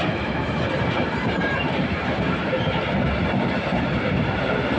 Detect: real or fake fake